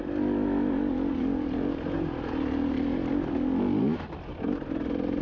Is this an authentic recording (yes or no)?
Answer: yes